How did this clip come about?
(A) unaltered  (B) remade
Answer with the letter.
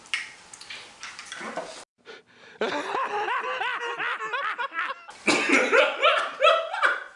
A